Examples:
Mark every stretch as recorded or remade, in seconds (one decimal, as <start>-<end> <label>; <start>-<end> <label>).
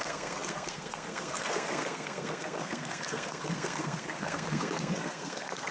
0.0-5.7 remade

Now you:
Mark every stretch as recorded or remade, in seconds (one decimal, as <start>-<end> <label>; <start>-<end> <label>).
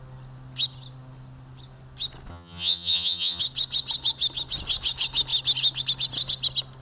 0.0-2.3 recorded; 2.3-3.4 remade; 3.4-6.8 recorded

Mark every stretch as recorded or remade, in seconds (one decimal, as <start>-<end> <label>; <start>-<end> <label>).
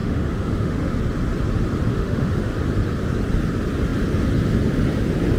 0.0-1.0 remade; 1.0-1.9 recorded; 1.9-2.5 remade; 2.5-5.4 recorded